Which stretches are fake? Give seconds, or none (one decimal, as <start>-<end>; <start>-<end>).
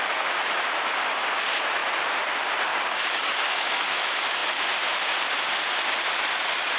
2.7-4.0